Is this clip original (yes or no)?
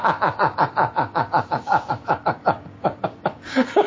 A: no